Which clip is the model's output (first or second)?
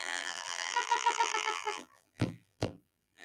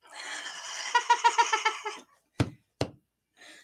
first